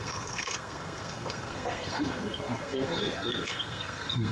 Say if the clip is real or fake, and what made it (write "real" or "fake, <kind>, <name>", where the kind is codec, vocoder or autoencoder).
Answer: fake, codec, SNAC